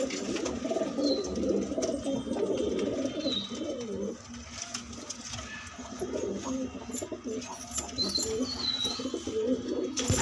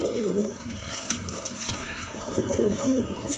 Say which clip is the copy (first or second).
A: second